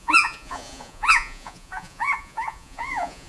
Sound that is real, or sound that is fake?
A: fake